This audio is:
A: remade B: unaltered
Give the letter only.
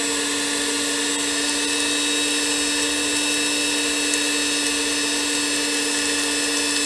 B